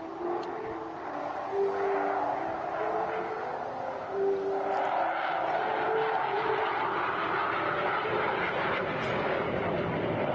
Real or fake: real